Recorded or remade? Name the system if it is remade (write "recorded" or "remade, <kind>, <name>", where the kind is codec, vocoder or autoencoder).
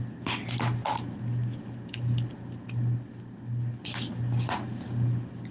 recorded